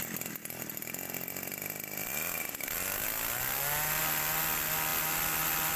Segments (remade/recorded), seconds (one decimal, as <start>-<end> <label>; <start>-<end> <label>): 0.0-5.8 recorded